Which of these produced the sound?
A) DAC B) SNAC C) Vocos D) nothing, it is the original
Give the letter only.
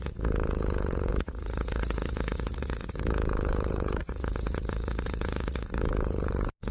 C